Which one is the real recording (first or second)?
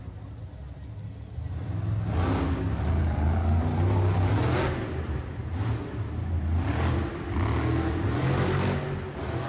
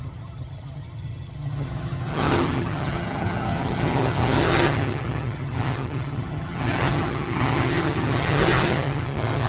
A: first